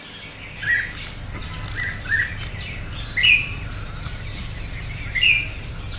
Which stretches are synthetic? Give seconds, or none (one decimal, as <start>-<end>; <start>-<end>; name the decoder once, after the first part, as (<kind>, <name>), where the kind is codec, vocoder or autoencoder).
1.4-5.0 (vocoder, BigVGAN v2)